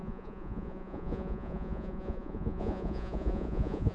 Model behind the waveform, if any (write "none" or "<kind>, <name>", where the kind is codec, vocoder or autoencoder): vocoder, Vocos